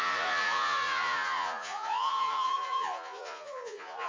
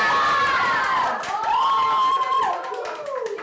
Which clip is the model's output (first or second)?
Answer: first